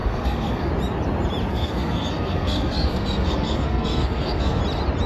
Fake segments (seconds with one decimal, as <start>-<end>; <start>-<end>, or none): 0.0-0.7; 1.5-4.6